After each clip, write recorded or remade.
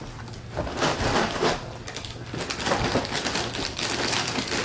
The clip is recorded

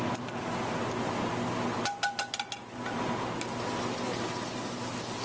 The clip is recorded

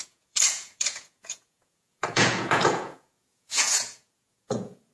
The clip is remade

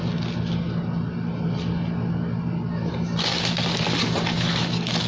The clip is recorded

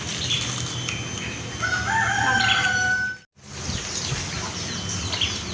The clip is recorded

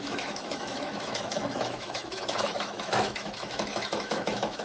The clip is remade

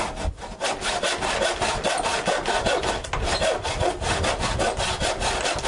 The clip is recorded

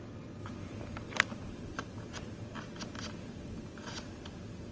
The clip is recorded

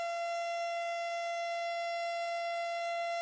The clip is remade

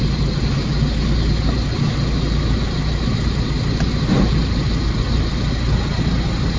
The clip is recorded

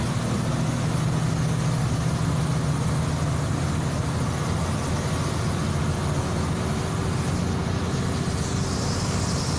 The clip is recorded